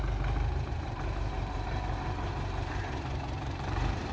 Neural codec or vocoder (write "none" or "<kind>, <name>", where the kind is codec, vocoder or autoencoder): vocoder, BigVGAN v2